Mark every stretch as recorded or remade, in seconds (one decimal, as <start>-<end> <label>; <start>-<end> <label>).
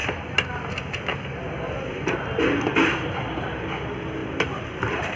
0.0-3.1 recorded; 3.1-5.2 remade